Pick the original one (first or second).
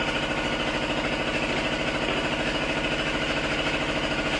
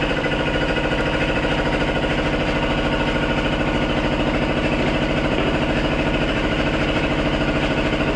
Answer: first